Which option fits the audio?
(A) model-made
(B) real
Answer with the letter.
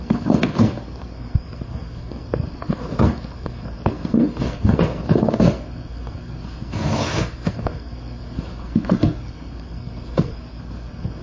A